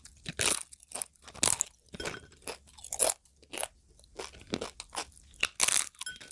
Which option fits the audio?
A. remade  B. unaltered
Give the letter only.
B